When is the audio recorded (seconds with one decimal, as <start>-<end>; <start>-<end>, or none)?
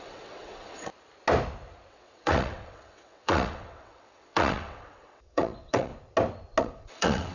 0.9-1.9; 5.9-6.6